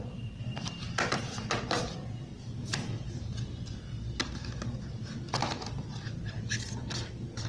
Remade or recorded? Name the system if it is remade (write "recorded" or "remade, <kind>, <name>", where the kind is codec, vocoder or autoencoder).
recorded